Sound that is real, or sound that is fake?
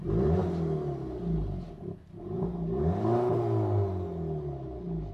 real